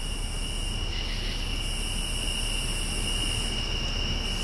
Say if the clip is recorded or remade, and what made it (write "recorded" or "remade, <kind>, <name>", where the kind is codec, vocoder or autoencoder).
recorded